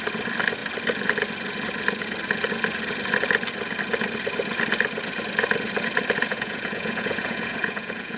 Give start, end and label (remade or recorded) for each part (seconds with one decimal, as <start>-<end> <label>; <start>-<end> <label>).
0.0-6.2 recorded; 6.2-8.2 remade